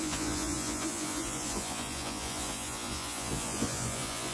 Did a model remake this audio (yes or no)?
yes